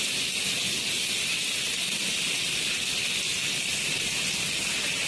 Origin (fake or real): real